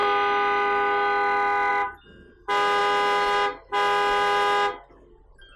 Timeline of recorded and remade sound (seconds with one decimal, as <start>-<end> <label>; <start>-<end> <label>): 0.0-5.6 recorded